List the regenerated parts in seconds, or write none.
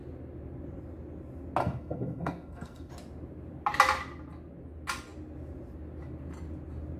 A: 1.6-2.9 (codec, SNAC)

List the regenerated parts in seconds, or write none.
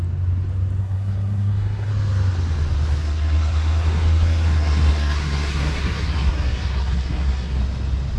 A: 0.8-1.9 (codec, SNAC); 3.0-7.6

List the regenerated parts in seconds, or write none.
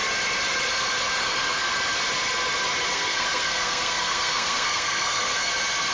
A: 1.2-1.7 (codec, SNAC); 2.9-5.5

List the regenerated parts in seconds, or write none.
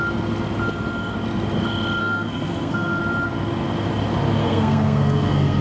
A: 2.0-3.0 (codec, SNAC); 4.4-5.6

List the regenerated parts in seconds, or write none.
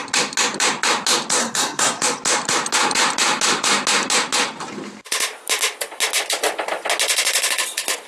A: 1.4-2.0 (codec, SNAC)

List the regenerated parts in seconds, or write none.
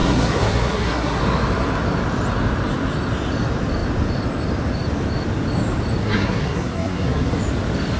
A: 0.0-1.2 (codec, SNAC); 6.0-7.4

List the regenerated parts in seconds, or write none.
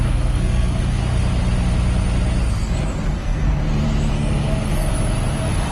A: 0.0-1.0 (codec, SNAC); 3.1-3.5; 4.1-4.9